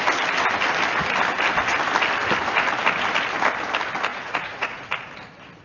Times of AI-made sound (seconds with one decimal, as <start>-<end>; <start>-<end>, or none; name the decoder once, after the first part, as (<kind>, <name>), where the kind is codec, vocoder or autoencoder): 4.1-4.9 (vocoder, Vocos)